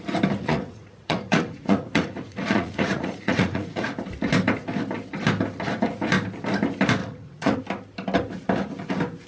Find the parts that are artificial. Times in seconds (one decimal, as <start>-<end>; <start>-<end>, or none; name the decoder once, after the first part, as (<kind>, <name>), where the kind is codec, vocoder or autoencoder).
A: 0.4-3.8 (vocoder, Vocos); 7.0-7.6